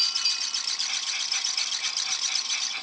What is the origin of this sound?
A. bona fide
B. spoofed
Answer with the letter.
A